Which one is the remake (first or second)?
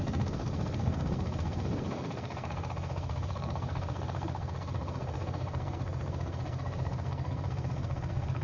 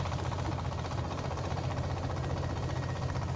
first